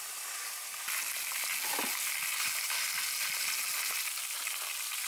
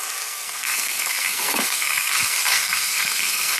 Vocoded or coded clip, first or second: second